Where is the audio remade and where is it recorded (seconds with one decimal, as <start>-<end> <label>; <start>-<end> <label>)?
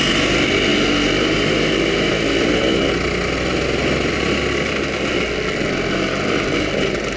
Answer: 0.0-7.2 recorded